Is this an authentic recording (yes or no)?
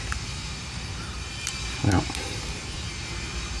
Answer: no